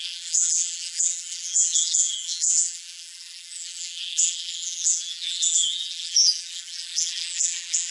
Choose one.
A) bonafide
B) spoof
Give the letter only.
B